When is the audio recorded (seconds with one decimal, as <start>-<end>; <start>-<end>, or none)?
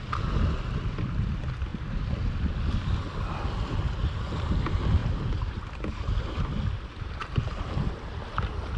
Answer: 0.0-7.2; 8.1-8.8